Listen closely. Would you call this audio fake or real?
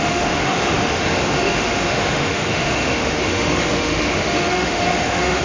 fake